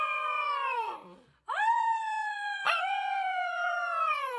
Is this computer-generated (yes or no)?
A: yes